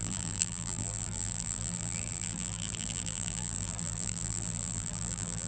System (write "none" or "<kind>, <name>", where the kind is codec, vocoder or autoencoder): vocoder, BigVGAN v2